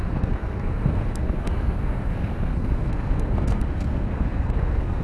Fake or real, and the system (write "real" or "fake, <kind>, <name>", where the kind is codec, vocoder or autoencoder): fake, codec, SNAC